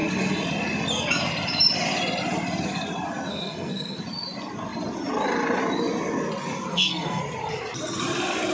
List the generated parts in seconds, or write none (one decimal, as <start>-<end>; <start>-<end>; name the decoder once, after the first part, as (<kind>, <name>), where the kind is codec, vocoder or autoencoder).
3.3-4.0 (codec, SNAC); 6.7-7.2